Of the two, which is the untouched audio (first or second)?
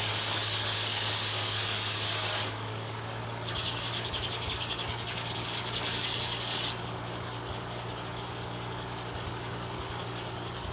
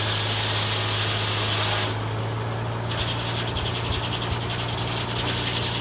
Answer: second